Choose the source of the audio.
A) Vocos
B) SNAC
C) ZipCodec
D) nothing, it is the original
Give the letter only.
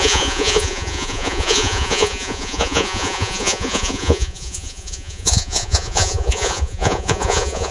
A